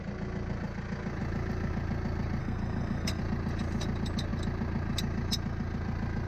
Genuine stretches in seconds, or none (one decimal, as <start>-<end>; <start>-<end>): 0.0-2.4; 3.2-6.3